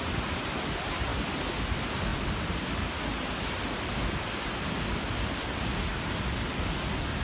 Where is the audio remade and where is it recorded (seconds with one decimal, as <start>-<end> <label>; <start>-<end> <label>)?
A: 0.0-7.2 recorded